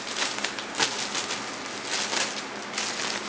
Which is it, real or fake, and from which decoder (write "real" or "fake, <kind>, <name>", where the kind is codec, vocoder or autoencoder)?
real